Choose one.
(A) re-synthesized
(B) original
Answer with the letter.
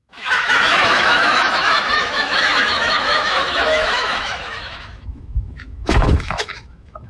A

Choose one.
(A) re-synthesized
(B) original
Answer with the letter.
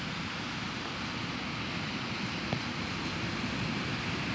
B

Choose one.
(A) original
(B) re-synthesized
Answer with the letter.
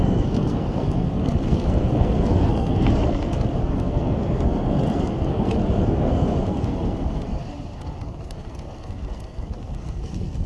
B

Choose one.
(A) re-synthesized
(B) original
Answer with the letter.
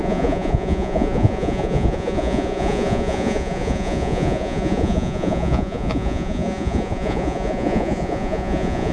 A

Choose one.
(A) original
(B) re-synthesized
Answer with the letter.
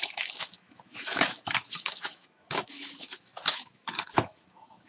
B